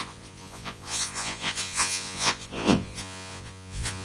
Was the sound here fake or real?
fake